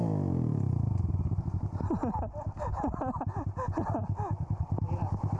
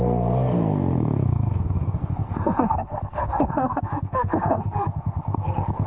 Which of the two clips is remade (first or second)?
second